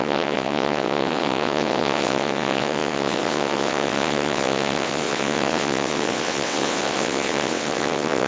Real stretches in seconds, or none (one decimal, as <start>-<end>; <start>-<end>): none